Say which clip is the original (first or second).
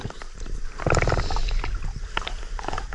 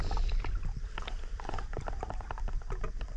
first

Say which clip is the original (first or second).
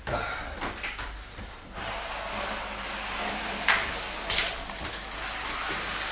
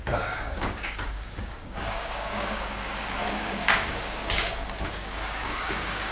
first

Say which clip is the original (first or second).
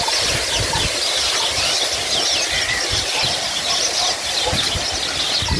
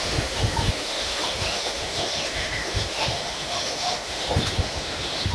first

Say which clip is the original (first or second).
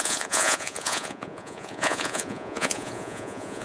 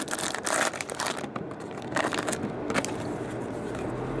second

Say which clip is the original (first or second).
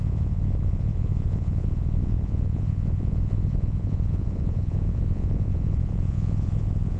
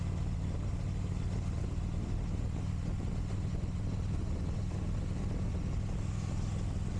second